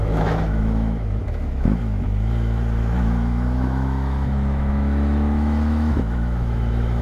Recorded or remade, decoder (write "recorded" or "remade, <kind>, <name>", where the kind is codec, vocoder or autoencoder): remade, autoencoder, DAC-VAE